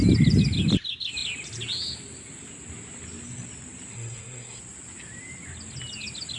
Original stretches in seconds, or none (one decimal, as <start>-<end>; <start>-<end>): 0.0-3.9; 4.6-6.4